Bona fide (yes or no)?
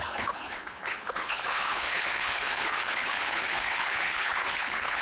no